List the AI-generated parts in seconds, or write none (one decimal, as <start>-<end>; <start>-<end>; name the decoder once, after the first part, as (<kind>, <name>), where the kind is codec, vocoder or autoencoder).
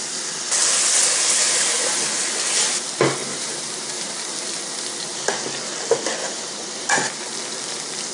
3.2-4.2 (vocoder, BigVGAN v2); 6.2-6.9